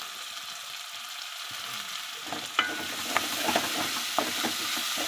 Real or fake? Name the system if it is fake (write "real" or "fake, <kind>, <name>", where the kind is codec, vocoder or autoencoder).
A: real